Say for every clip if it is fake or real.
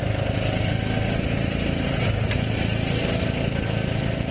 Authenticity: real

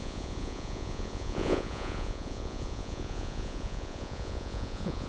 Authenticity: fake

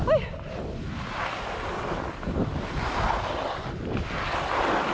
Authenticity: real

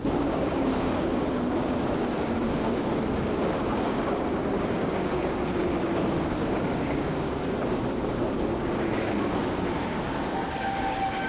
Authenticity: fake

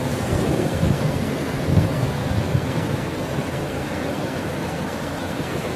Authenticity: fake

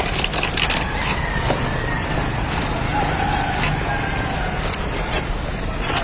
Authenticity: fake